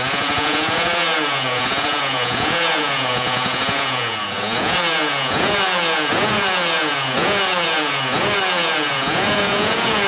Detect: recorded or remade remade